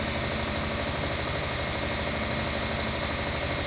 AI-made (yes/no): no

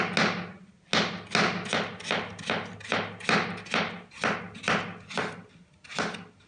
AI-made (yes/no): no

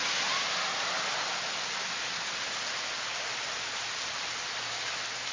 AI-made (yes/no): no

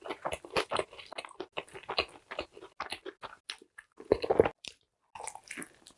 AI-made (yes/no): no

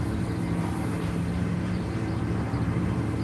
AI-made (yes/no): yes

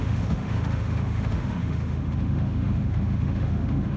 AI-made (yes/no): yes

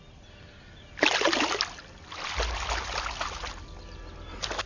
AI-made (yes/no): no